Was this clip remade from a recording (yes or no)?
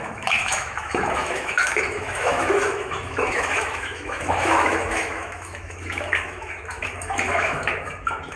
yes